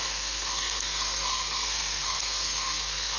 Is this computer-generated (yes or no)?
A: yes